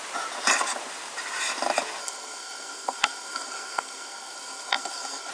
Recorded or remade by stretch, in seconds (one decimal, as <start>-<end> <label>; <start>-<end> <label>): 0.0-2.0 recorded; 2.0-5.3 remade